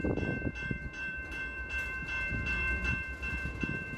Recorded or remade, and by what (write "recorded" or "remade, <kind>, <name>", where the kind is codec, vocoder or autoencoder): remade, vocoder, BigVGAN v2